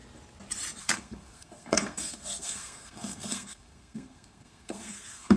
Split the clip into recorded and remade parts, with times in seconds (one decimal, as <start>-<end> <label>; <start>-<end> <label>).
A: 0.0-0.8 recorded; 0.8-5.4 remade

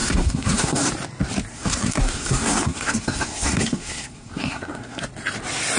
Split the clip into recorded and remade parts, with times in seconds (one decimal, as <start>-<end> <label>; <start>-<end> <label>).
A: 0.0-0.9 remade; 0.9-1.5 recorded; 1.5-5.0 remade; 5.0-5.8 recorded